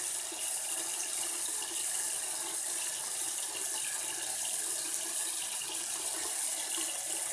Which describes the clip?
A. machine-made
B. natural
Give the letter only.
B